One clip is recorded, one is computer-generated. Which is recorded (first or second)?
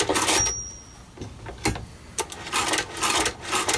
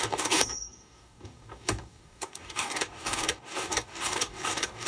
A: first